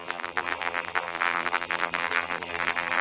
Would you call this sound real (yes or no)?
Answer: no